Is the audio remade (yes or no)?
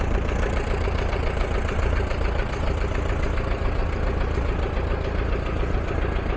no